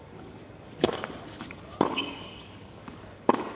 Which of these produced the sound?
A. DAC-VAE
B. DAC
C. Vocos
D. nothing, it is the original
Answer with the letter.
B